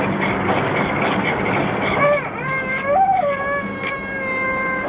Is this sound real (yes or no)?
yes